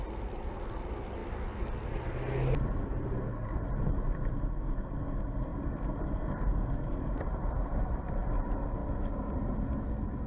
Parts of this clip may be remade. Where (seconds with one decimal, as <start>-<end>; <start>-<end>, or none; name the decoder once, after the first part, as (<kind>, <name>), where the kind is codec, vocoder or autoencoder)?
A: none